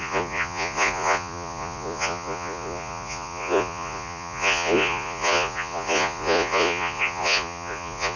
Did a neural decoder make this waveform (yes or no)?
yes